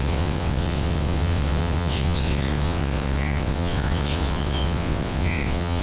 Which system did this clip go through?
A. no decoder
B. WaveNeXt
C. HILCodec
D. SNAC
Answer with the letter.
B